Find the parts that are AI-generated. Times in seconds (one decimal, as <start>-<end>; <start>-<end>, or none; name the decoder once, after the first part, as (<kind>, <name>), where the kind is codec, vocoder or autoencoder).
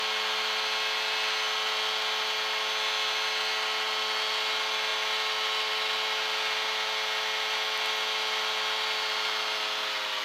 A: none